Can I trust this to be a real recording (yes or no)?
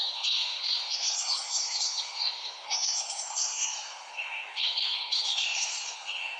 no